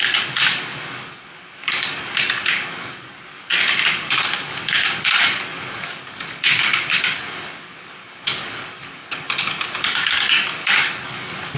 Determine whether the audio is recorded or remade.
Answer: remade